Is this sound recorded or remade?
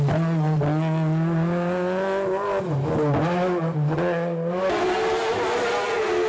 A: recorded